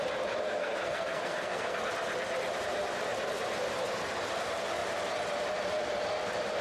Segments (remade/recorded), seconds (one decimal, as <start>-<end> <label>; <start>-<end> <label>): 0.0-0.4 recorded; 0.4-1.9 remade; 1.9-6.6 recorded